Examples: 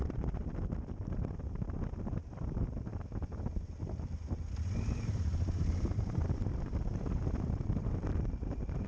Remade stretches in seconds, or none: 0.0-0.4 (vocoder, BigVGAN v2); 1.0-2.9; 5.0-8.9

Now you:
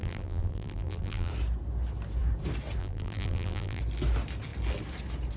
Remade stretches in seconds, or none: 0.0-1.3 (vocoder, BigVGAN v2); 2.8-3.8

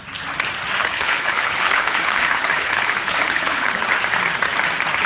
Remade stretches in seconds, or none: 0.8-3.9 (codec, HILCodec)

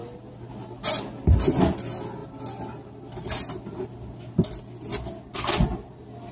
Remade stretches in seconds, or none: none

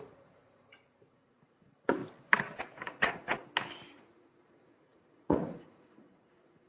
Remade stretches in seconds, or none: 0.0-2.0 (vocoder, Vocos); 2.6-3.4; 3.9-6.7

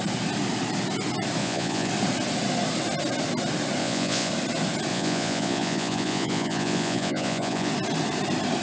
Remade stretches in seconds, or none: 1.4-1.9 (vocoder, Vocos); 3.8-4.3; 4.9-7.7

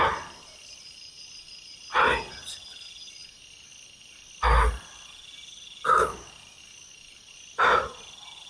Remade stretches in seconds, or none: none